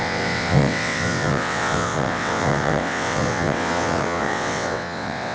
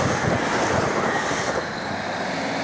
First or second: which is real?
second